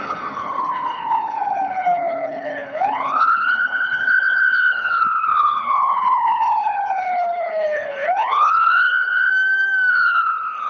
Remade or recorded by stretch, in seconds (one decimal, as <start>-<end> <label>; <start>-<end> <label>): 0.0-9.3 remade; 9.3-9.9 recorded; 9.9-10.7 remade